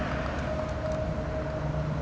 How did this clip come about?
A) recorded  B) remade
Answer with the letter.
A